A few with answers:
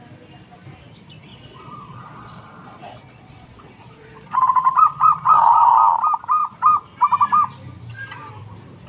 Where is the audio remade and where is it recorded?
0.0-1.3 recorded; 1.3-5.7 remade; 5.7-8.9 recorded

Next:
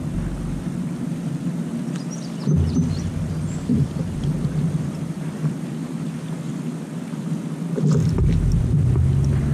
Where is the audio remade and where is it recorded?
0.0-1.7 recorded; 1.7-2.4 remade; 2.4-3.7 recorded; 3.7-7.2 remade; 7.2-9.5 recorded

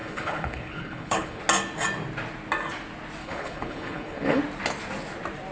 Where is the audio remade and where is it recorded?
0.0-1.4 remade; 1.4-3.2 recorded; 3.2-4.4 remade; 4.4-5.5 recorded

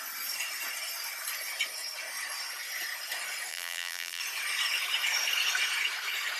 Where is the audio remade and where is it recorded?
0.0-3.5 recorded; 3.5-4.2 remade; 4.2-6.4 recorded